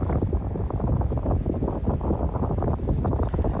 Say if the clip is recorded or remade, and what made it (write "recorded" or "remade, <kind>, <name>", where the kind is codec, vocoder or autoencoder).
recorded